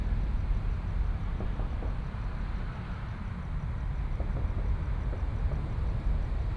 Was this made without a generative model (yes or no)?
yes